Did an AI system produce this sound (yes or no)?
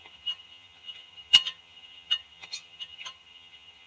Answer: yes